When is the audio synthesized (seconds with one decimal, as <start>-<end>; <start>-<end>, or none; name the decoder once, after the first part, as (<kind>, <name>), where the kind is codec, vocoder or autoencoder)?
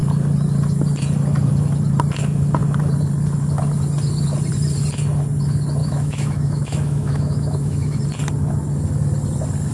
5.8-8.0 (autoencoder, DAC-VAE)